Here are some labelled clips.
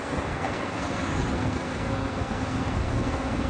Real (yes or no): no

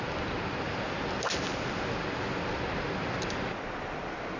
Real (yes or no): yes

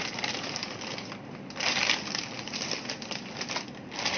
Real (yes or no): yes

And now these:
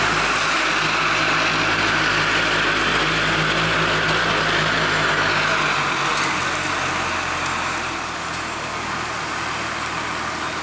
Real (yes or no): yes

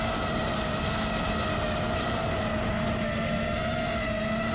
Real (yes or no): yes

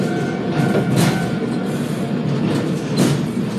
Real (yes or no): yes